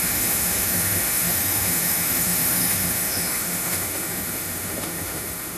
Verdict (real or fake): fake